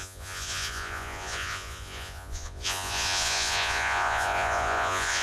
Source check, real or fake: fake